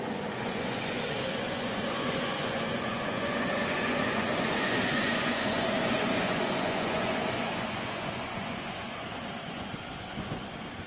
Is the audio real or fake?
fake